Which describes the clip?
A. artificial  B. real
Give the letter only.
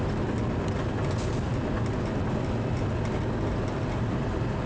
B